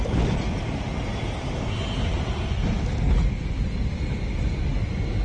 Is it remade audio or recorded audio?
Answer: recorded